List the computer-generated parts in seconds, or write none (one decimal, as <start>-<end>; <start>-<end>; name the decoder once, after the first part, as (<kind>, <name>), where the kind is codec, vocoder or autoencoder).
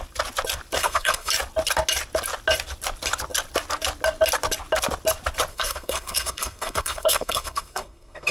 0.8-1.3 (codec, SNAC); 5.5-8.3